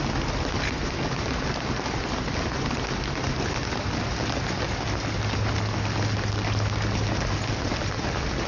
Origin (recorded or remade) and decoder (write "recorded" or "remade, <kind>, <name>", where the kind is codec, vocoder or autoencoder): recorded